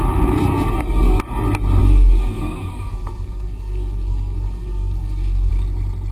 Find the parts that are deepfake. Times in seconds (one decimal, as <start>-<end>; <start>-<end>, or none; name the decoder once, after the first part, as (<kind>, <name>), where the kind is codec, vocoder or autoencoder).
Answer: 0.4-1.2 (codec, SNAC); 1.8-5.5